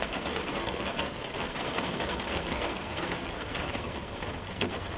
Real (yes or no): no